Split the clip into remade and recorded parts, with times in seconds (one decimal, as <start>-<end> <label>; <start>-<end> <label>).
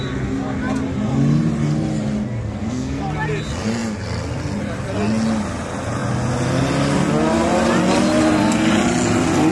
0.0-2.4 recorded; 2.4-3.0 remade; 3.0-9.5 recorded